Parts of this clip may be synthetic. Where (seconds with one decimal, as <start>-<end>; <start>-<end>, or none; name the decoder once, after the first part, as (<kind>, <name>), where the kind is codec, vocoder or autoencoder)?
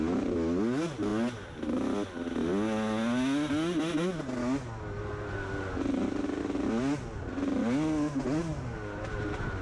none